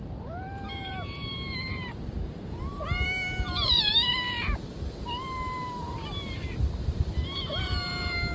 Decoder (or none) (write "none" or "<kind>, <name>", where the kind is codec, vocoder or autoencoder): vocoder, BigVGAN v2